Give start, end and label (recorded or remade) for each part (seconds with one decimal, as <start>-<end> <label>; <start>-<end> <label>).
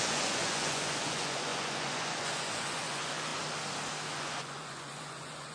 0.0-3.3 remade; 3.3-4.1 recorded; 4.1-5.5 remade